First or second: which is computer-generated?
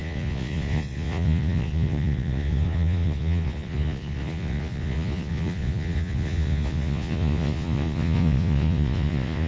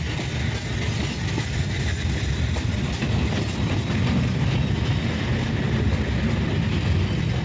first